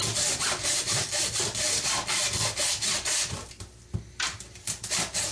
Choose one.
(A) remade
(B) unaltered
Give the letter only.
B